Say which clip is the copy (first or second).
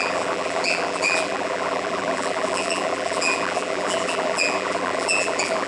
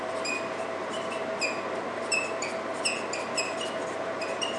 first